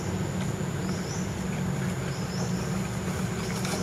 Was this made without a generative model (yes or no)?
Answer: yes